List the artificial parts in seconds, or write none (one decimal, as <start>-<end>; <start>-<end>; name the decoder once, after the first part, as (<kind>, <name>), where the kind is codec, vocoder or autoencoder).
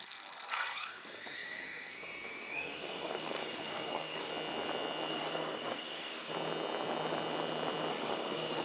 0.0-4.3 (codec, SNAC); 5.1-6.3; 7.9-8.6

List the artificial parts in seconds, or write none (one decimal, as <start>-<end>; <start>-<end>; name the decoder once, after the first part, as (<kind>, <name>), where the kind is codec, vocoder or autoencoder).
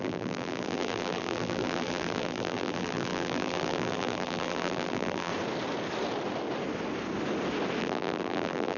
0.0-5.3 (vocoder, BigVGAN v2); 7.8-8.8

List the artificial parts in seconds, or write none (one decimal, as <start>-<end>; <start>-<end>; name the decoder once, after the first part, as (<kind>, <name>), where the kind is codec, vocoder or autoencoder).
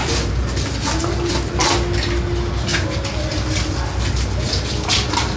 none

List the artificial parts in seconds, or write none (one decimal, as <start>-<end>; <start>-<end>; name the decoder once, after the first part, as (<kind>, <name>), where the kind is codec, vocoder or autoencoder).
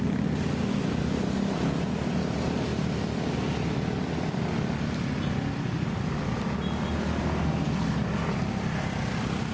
7.7-8.8 (vocoder, BigVGAN v2)